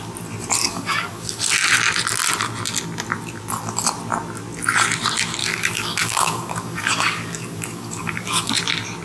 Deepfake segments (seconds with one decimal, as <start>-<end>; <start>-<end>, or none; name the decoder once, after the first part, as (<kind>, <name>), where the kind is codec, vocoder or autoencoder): 0.6-1.4 (codec, DAC); 5.4-8.5